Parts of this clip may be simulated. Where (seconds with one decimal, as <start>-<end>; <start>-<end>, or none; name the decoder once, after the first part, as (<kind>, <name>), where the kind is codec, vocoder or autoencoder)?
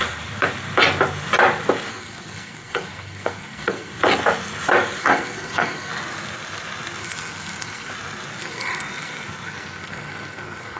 1.9-4.0 (codec, SNAC); 5.0-5.9; 7.0-7.9; 8.4-10.8